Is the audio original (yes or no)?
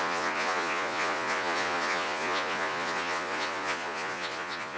no